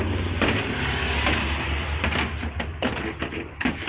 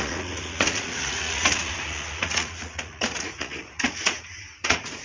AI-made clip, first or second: second